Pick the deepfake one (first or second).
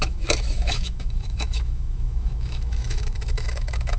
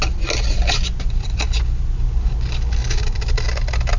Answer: first